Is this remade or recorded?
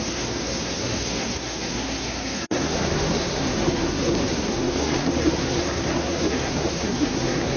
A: remade